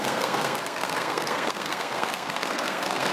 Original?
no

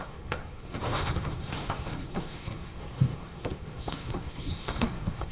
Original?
no